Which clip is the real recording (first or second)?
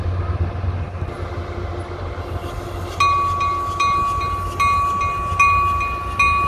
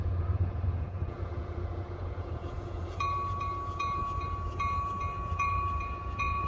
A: first